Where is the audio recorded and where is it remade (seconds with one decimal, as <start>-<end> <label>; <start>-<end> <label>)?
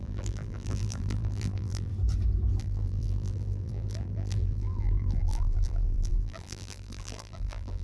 0.0-1.9 remade; 1.9-2.6 recorded; 2.6-7.8 remade